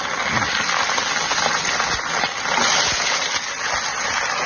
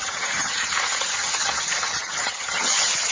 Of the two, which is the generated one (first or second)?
second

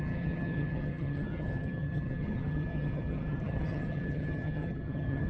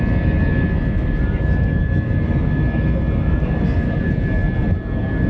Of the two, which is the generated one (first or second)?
first